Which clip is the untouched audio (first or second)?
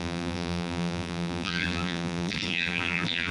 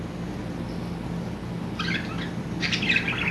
second